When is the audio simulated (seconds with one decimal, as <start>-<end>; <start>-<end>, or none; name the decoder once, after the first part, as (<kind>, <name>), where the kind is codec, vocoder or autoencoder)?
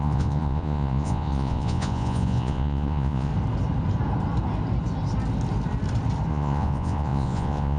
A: 0.0-3.3 (vocoder, Vocos); 6.3-7.8